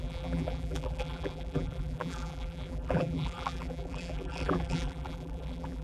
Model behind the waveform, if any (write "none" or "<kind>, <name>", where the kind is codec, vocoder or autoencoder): vocoder, BigVGAN v2